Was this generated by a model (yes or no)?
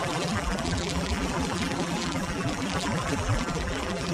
yes